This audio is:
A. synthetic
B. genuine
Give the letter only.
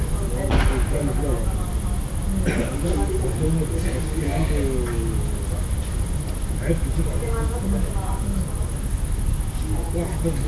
B